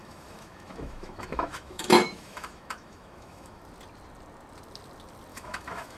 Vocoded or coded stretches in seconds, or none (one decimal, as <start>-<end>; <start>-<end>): 0.0-3.6; 5.3-6.0